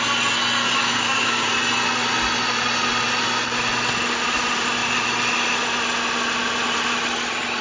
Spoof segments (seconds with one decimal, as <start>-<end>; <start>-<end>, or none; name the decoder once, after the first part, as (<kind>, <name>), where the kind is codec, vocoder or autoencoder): 0.6-1.5 (codec, DAC)